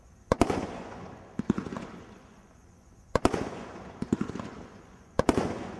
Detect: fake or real fake